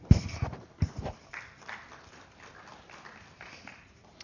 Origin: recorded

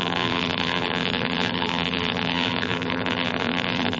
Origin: remade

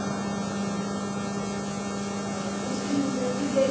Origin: recorded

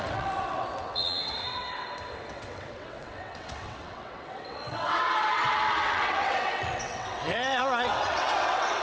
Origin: remade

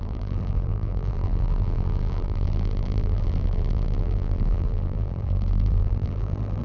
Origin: remade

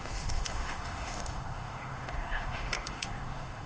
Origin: remade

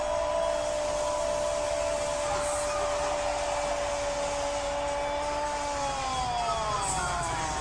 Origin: recorded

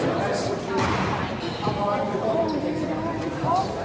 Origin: recorded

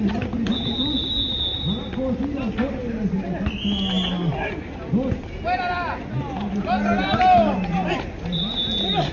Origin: recorded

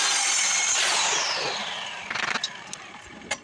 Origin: recorded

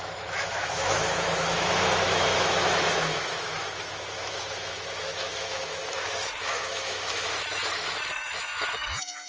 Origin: remade